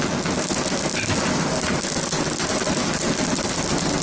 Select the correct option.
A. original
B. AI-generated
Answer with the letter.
A